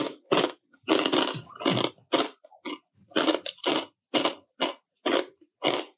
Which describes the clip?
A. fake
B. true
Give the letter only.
B